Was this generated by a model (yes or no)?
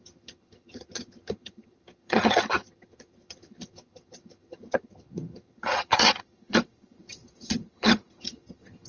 yes